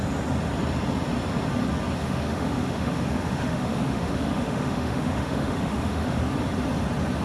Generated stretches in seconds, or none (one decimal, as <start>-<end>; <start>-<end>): 2.0-6.3